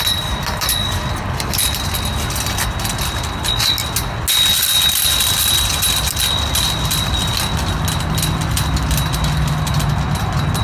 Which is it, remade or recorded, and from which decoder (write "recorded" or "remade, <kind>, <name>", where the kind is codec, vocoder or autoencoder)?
recorded